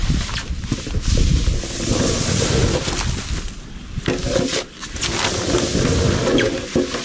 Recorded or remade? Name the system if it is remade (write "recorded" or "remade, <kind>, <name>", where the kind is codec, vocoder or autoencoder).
recorded